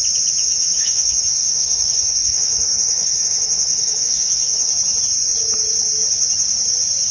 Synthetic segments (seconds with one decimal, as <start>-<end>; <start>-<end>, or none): 0.4-4.7